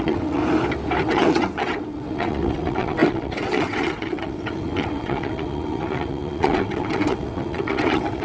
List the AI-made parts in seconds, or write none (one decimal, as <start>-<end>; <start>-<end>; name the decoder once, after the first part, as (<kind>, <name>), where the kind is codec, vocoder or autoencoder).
0.0-0.4 (vocoder, WaveNeXt); 1.0-8.2